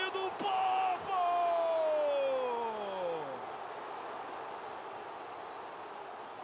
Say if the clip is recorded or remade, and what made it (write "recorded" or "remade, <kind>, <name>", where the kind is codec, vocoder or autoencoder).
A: recorded